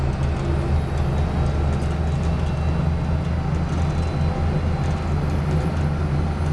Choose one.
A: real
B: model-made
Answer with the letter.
A